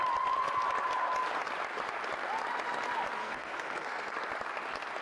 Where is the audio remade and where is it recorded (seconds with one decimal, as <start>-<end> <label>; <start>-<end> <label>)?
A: 0.0-3.2 recorded; 3.2-4.1 remade; 4.1-5.0 recorded